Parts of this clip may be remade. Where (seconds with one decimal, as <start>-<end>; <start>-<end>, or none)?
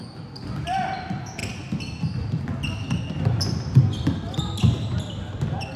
none